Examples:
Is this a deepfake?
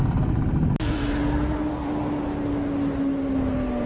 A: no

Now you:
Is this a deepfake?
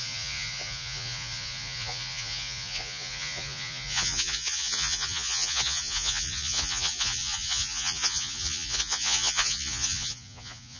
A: yes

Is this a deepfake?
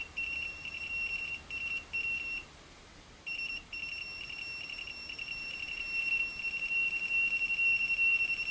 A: yes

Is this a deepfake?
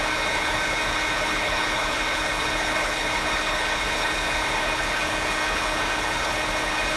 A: yes